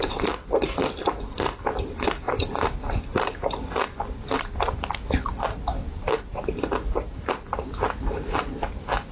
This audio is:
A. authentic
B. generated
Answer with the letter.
A